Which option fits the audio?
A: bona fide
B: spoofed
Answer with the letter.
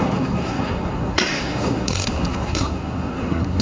B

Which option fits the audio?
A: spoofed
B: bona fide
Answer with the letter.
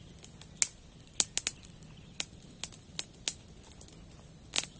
B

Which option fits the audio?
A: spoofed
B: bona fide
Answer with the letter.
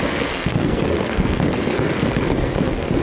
A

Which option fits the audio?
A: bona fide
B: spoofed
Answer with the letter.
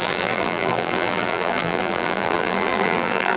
B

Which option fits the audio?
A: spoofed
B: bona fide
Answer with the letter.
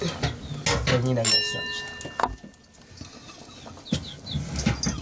B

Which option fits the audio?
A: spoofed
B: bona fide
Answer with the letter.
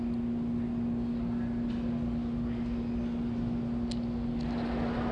B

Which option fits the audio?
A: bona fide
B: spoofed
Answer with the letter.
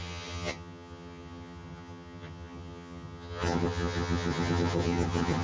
B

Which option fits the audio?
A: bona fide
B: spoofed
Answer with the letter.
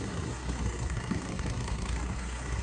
B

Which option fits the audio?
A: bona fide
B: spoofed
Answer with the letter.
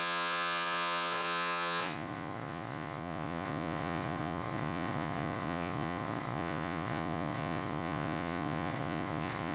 B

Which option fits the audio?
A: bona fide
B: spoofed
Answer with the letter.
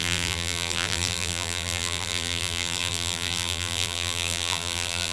B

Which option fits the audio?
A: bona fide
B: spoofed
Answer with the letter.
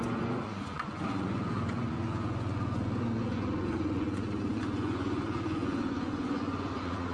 B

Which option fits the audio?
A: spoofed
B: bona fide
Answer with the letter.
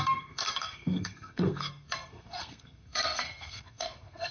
A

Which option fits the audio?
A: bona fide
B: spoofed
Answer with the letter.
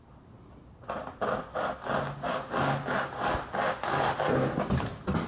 A